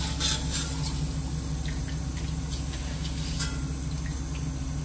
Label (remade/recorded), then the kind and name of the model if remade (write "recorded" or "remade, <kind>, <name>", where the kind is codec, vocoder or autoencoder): recorded